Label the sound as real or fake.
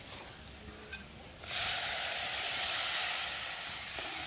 real